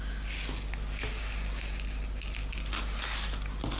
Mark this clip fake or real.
real